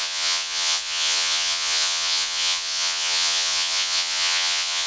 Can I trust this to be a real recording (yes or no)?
no